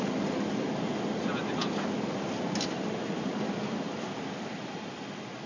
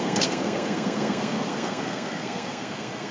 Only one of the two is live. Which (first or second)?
first